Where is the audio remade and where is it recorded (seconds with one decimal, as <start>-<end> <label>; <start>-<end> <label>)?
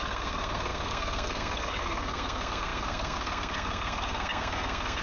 0.0-5.0 remade